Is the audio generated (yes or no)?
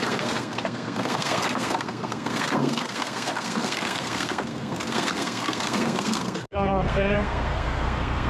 yes